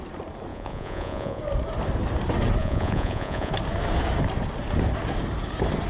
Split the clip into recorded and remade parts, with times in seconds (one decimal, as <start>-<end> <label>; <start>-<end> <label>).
0.0-0.5 recorded; 0.5-1.4 remade; 1.4-2.6 recorded; 2.6-3.5 remade; 3.5-5.9 recorded